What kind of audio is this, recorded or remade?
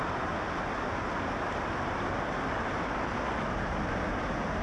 recorded